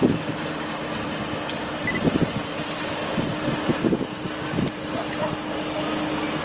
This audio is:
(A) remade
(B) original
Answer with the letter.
B